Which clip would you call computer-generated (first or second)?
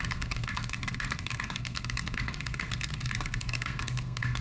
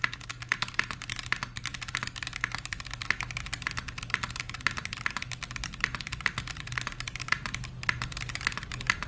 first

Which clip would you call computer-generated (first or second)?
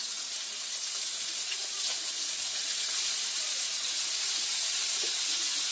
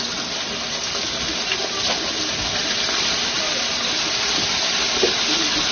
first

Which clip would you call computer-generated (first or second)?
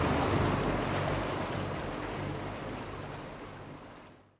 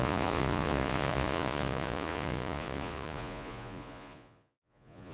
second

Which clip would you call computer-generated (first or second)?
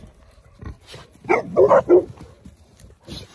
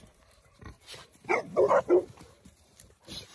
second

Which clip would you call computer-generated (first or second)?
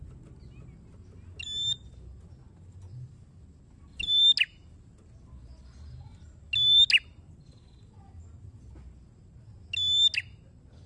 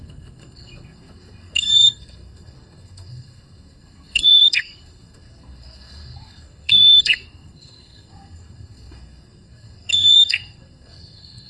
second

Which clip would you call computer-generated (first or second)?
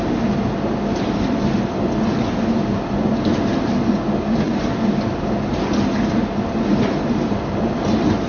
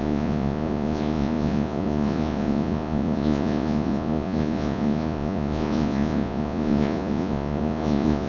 second